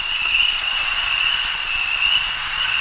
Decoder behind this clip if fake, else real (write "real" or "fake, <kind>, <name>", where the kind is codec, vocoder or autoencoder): real